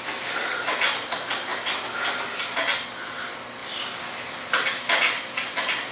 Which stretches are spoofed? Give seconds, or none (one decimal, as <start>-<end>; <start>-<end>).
3.6-5.2